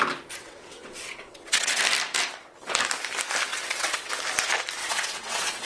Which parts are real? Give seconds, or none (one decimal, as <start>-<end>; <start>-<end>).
0.0-0.4; 1.8-3.5; 4.1-4.8